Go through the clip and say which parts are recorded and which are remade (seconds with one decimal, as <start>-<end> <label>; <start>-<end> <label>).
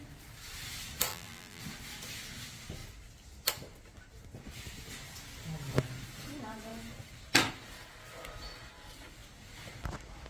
0.0-1.1 recorded; 1.1-1.6 remade; 1.6-10.3 recorded